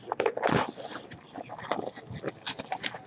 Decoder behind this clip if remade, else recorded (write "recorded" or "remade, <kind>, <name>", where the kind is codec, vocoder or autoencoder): recorded